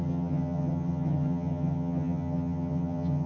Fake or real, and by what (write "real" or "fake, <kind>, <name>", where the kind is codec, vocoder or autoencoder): fake, vocoder, HiFi-GAN